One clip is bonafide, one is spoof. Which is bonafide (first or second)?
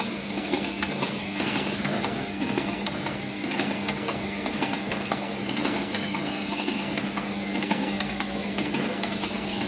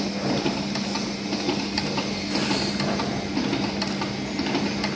second